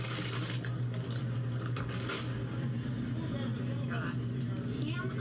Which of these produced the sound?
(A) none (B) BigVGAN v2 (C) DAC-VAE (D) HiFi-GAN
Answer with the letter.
A